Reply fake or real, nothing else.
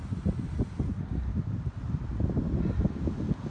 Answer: real